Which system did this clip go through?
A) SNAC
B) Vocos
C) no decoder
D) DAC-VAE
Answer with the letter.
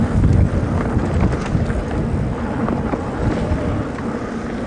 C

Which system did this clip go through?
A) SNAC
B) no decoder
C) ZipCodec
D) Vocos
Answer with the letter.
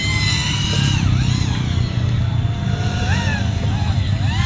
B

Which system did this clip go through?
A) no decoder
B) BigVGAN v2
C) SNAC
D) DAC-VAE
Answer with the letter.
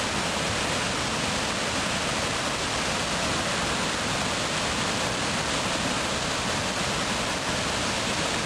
A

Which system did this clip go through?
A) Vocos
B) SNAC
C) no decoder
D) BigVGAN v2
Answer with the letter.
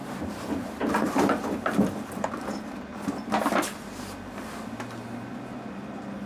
C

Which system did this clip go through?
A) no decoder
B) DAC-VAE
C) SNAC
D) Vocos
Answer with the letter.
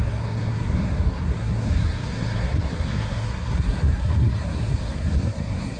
C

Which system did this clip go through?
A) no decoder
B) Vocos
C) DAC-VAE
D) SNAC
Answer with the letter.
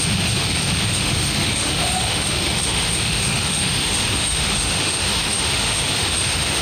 C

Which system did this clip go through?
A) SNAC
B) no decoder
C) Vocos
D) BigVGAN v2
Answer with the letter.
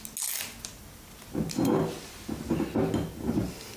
B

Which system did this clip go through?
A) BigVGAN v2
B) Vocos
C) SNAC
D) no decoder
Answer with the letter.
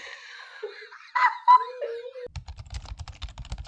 D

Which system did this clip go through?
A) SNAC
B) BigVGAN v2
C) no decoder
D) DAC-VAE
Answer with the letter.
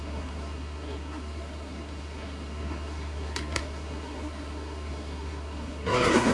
A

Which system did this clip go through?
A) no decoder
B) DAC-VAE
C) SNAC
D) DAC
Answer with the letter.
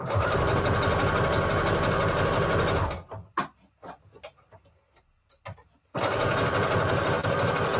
A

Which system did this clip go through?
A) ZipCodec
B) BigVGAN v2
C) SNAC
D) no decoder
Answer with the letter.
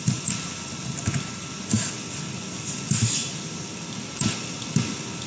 D